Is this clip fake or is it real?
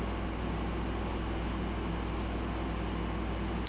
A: real